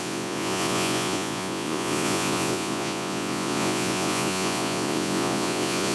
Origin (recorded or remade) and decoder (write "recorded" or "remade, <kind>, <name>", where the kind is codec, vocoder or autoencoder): remade, vocoder, Vocos